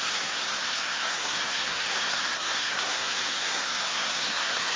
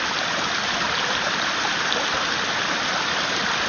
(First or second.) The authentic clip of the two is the second